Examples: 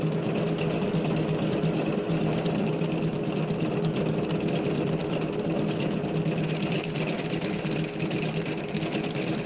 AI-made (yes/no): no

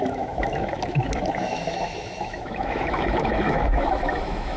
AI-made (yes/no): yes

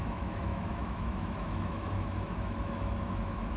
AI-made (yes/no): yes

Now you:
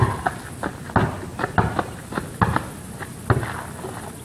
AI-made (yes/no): no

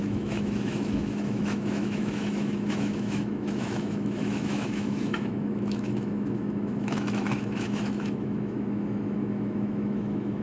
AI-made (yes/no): yes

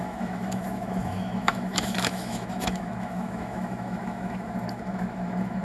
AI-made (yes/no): yes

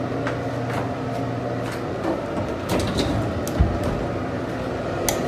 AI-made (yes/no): no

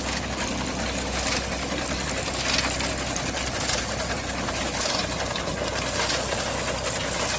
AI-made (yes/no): no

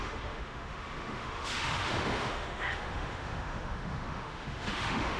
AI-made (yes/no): yes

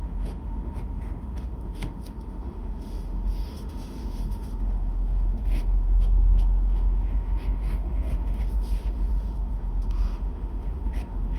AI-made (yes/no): yes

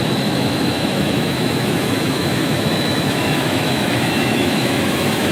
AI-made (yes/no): yes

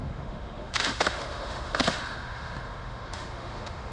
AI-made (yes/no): yes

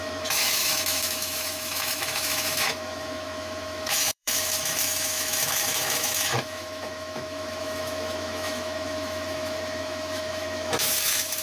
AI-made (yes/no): yes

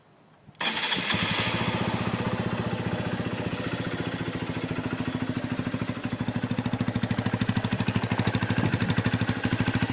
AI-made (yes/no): no